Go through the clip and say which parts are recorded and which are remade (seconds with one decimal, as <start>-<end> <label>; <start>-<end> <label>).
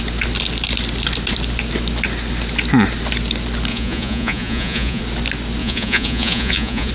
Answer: 0.0-3.7 recorded; 3.7-5.0 remade; 5.0-5.6 recorded; 5.6-6.9 remade